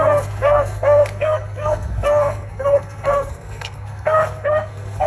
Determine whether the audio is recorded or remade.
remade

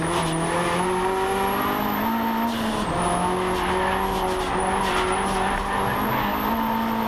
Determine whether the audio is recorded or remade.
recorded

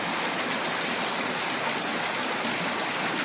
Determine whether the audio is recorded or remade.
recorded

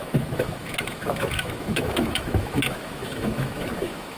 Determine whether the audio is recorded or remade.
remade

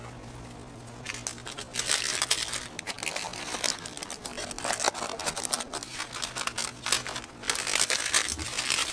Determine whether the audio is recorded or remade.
recorded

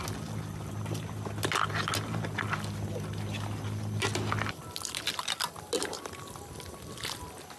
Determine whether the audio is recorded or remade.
recorded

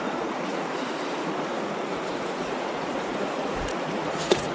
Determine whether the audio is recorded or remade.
remade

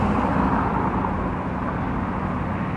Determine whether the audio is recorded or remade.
recorded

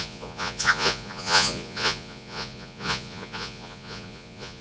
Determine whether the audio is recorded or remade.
remade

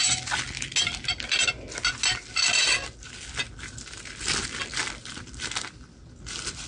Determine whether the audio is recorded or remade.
recorded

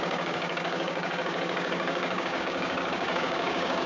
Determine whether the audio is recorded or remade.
remade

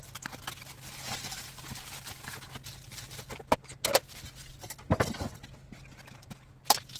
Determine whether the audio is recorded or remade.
recorded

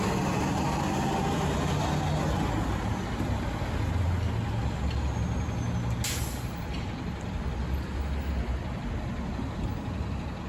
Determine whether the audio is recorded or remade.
recorded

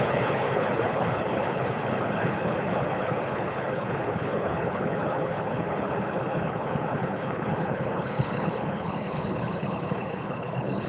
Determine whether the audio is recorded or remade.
remade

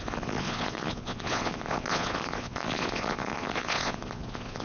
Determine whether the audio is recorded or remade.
remade